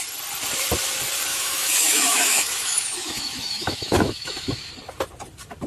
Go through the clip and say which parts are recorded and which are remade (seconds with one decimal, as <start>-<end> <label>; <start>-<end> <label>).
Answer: 0.0-1.3 recorded; 1.3-4.7 remade; 4.7-5.7 recorded